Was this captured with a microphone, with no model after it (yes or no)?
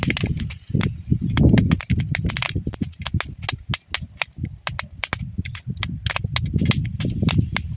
yes